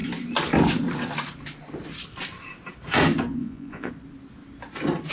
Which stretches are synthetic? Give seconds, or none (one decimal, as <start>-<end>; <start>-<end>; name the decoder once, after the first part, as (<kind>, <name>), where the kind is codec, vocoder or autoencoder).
3.4-3.9 (vocoder, Vocos)